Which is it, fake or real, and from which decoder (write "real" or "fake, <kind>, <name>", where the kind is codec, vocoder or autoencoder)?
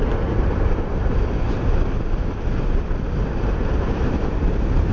fake, vocoder, BigVGAN v2